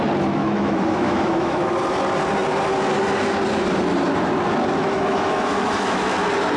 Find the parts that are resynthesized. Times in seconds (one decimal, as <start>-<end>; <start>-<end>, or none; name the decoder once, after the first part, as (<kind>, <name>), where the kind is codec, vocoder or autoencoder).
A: 0.4-1.7 (autoencoder, DAC-VAE); 4.8-6.0